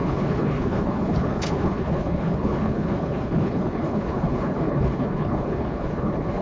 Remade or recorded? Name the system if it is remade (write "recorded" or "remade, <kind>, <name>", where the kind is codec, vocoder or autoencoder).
remade, codec, HILCodec